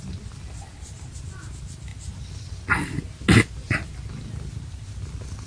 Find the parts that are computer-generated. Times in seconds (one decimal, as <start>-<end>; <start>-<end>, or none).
none